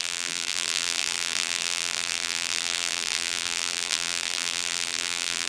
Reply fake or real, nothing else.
fake